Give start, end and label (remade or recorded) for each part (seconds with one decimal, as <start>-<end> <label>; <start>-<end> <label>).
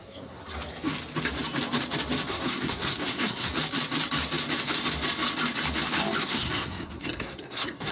0.0-0.4 remade; 0.4-2.3 recorded; 2.3-3.5 remade; 3.5-6.2 recorded; 6.2-7.9 remade